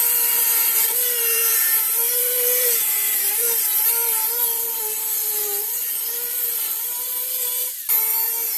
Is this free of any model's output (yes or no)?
no